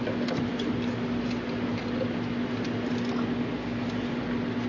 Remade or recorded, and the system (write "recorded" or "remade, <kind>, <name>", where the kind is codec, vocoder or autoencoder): recorded